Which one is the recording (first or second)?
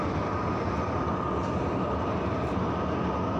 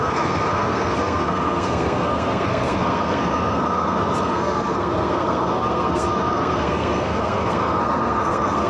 first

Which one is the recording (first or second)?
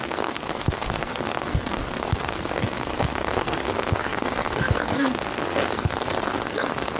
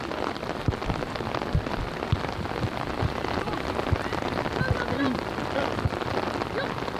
second